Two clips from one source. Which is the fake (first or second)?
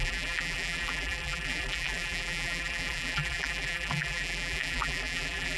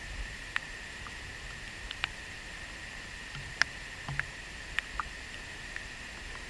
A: first